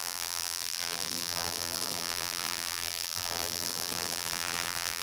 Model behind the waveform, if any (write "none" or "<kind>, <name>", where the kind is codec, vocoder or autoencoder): vocoder, BigVGAN v2